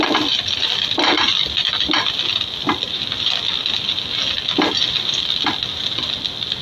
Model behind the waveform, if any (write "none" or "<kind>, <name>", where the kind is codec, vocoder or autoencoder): none